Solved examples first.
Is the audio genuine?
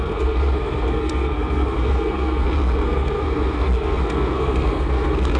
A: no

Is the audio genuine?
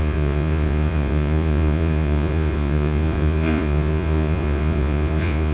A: no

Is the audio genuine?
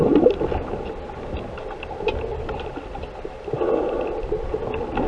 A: yes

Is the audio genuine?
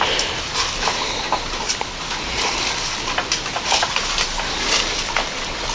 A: yes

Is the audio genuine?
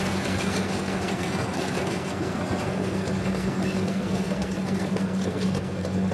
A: no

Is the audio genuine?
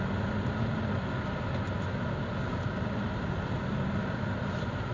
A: yes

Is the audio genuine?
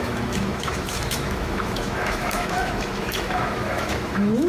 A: no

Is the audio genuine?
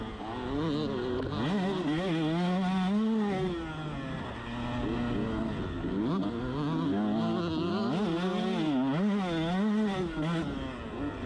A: yes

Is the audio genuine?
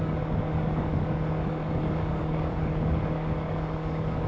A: no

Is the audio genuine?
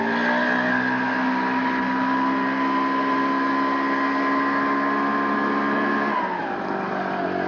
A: yes